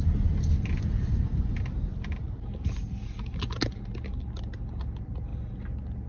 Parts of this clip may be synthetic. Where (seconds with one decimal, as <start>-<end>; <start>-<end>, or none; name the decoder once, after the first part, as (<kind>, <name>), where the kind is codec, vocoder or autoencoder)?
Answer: none